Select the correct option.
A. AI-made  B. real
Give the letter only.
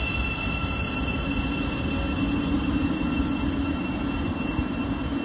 B